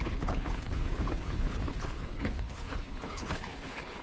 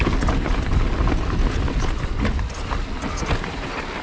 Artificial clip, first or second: first